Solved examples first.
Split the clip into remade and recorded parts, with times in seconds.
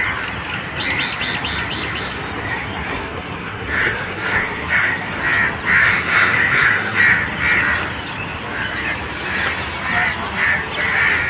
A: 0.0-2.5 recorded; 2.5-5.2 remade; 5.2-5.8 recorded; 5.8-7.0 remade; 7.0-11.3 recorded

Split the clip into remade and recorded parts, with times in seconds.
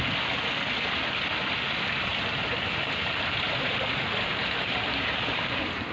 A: 0.0-2.1 recorded; 2.1-5.9 remade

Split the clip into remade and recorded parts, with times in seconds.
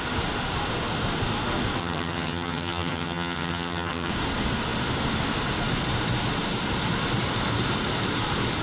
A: 0.0-1.8 recorded; 1.8-4.1 remade; 4.1-8.6 recorded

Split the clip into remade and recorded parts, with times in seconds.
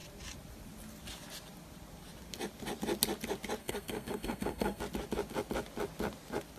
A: 0.0-3.6 recorded; 3.6-4.8 remade; 4.8-6.6 recorded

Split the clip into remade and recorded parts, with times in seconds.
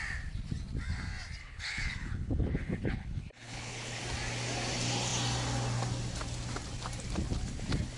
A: 0.0-1.4 recorded; 1.4-4.0 remade; 4.0-8.0 recorded